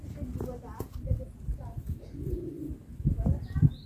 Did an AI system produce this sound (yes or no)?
no